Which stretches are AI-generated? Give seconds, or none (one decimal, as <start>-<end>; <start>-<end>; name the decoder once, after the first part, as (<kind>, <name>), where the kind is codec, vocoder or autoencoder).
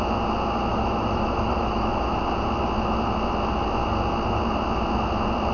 0.7-2.1 (autoencoder, DAC-VAE)